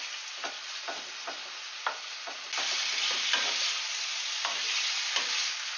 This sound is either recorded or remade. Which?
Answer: recorded